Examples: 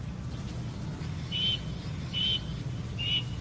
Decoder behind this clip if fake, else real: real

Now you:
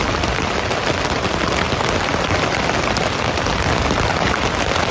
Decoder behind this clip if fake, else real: real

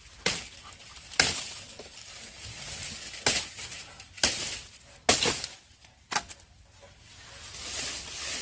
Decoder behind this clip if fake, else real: real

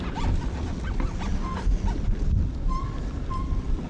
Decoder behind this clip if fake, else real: real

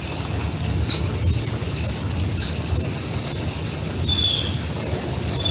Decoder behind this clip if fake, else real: real